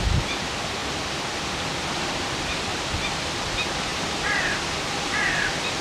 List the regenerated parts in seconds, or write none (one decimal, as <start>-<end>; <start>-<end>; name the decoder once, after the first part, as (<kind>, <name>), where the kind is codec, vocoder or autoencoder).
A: 0.8-2.3 (vocoder, BigVGAN v2); 2.7-3.2; 3.9-4.5